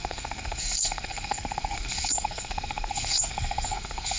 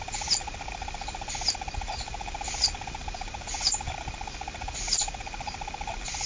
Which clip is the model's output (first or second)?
first